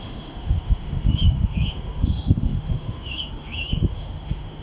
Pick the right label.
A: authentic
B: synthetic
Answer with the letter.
B